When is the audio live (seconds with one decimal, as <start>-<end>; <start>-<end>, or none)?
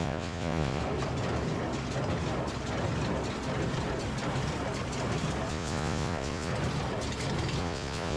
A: 0.8-5.5; 6.5-7.6